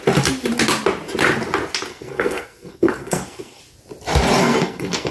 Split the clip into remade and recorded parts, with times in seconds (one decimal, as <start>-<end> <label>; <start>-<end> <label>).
0.0-1.9 recorded; 1.9-3.6 remade; 3.6-4.4 recorded; 4.4-5.1 remade